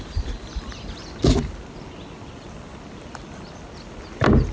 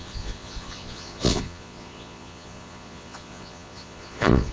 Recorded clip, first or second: first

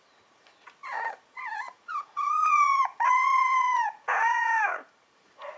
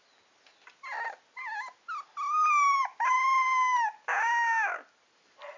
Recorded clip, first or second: second